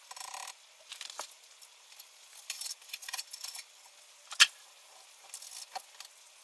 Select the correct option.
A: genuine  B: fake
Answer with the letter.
A